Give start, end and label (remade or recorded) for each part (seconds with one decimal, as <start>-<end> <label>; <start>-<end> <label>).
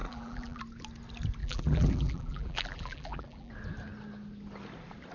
0.0-0.6 remade; 0.6-1.4 recorded; 1.4-3.5 remade; 3.5-5.1 recorded